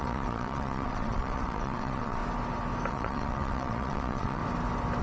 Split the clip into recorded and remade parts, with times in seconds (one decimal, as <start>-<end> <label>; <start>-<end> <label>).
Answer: 0.0-2.2 remade; 2.2-2.9 recorded; 2.9-4.4 remade; 4.4-5.0 recorded